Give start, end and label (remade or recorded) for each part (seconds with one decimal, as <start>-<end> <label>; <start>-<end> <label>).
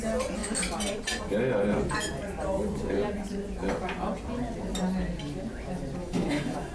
0.0-6.0 recorded; 6.0-6.7 remade